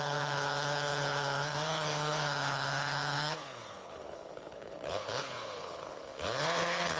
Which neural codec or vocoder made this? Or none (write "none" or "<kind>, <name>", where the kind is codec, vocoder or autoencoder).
codec, HILCodec